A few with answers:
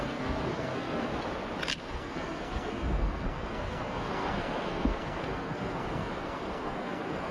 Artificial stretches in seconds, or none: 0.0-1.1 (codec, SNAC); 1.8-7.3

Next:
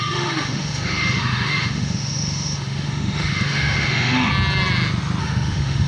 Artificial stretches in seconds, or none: 0.0-4.3 (autoencoder, DAC-VAE); 5.2-5.9

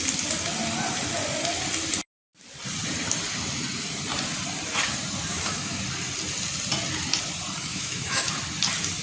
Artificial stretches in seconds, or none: 5.3-5.8 (autoencoder, DAC-VAE); 7.7-8.4

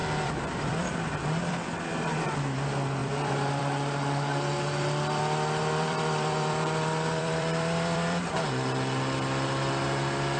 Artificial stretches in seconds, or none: 0.0-0.9 (vocoder, BigVGAN v2); 3.0-3.6; 5.6-8.3